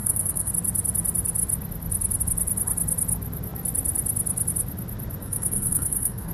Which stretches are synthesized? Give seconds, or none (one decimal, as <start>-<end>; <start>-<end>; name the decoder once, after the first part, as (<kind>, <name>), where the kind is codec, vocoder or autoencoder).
0.0-0.5 (codec, SNAC); 5.2-6.3